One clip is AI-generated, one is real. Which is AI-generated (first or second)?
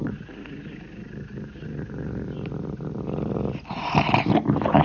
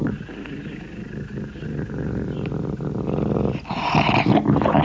first